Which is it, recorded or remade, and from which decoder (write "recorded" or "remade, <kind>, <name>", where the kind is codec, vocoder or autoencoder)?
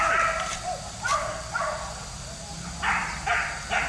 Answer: recorded